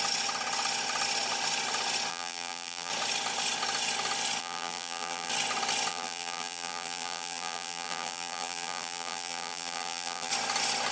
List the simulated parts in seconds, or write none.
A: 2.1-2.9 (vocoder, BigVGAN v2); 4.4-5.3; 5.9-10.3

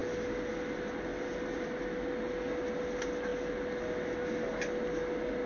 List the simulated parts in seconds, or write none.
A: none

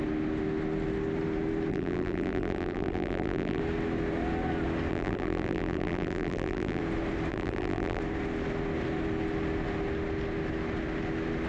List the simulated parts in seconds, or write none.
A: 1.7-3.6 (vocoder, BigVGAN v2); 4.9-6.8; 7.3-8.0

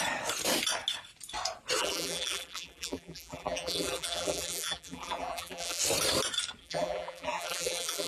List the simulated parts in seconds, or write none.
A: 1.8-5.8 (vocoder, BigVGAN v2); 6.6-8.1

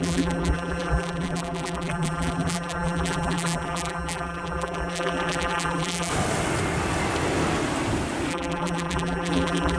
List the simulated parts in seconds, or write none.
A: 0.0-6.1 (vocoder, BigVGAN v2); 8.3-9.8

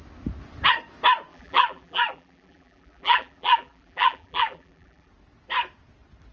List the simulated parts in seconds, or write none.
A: 1.3-5.1 (vocoder, BigVGAN v2)

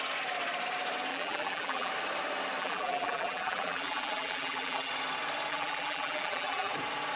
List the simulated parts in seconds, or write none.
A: 1.1-1.9 (vocoder, BigVGAN v2); 2.6-4.9; 5.5-6.7

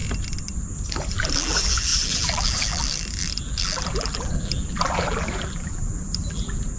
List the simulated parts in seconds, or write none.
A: 1.1-6.8 (vocoder, BigVGAN v2)